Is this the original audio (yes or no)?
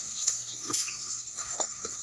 no